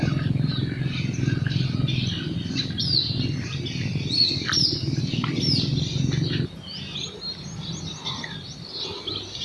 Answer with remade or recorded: recorded